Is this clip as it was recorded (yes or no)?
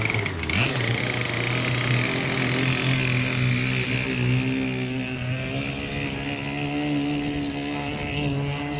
yes